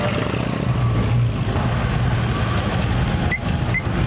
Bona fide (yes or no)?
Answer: yes